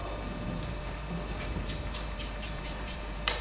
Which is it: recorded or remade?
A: remade